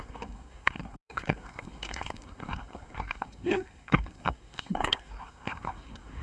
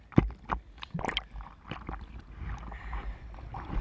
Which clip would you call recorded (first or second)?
second